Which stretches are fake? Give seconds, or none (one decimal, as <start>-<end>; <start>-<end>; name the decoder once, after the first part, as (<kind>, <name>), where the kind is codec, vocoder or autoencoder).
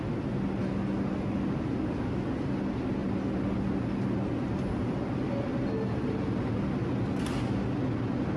none